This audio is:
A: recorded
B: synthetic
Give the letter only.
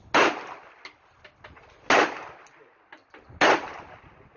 A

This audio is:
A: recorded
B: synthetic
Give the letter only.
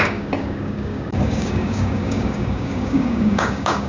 B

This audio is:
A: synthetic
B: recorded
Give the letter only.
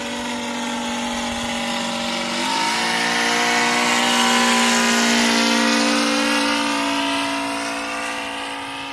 B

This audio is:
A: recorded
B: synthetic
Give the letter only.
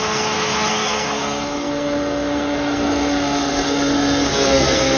B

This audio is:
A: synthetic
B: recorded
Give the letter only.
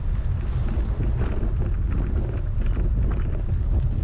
B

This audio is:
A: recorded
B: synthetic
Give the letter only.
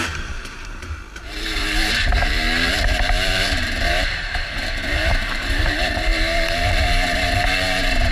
B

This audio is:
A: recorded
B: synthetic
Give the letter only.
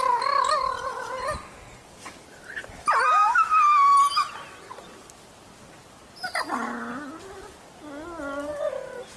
A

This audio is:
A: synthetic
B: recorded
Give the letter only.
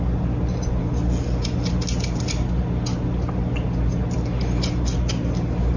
B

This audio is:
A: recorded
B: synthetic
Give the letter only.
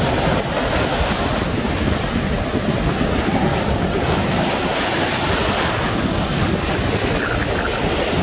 A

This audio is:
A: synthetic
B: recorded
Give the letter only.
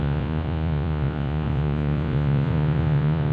A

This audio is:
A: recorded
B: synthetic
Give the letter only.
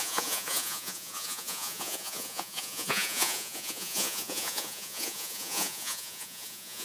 B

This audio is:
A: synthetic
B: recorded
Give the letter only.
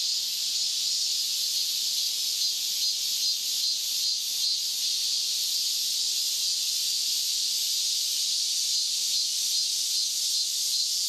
B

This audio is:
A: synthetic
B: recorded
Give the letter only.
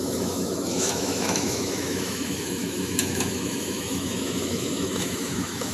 A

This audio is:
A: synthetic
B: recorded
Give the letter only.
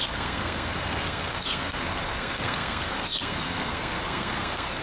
A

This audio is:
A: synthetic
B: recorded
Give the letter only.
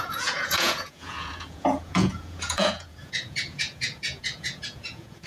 A